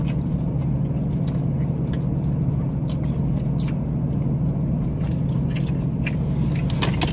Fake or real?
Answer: real